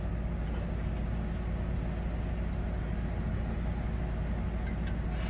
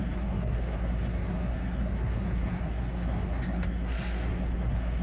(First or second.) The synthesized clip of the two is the second